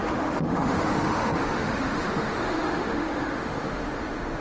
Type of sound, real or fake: fake